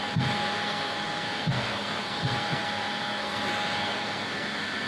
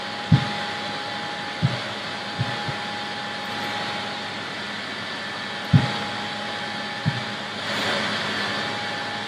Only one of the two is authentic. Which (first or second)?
second